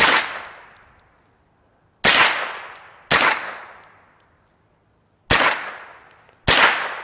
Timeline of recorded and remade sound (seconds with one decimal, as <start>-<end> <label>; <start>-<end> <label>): 0.0-7.0 recorded

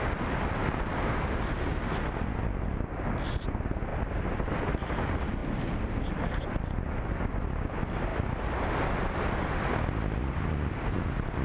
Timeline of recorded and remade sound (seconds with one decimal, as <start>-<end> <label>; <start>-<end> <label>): 0.0-11.4 recorded

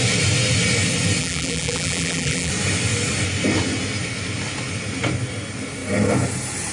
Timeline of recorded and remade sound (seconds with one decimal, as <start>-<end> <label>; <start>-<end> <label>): 0.0-1.2 recorded; 1.2-2.5 remade; 2.5-6.7 recorded